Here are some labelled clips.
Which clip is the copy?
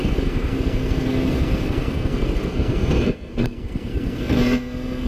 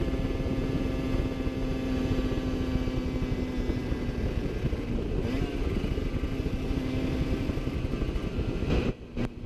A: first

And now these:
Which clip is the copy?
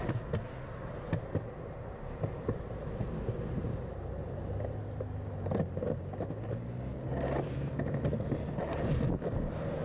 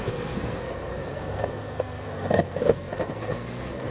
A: second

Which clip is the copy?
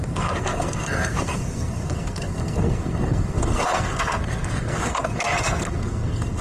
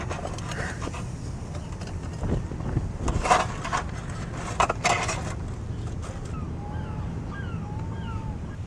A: first